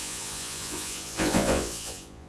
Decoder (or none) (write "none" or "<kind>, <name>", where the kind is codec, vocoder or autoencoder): vocoder, Vocos